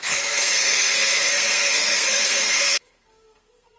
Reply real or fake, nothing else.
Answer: fake